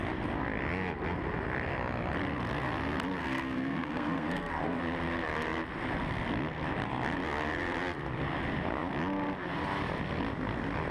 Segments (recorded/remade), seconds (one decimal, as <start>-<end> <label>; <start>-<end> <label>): 0.0-3.2 recorded; 3.2-4.8 remade; 4.8-10.9 recorded